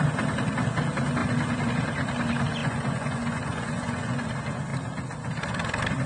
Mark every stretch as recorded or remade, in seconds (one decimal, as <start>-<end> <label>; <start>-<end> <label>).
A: 0.0-2.6 recorded; 2.6-4.3 remade; 4.3-6.1 recorded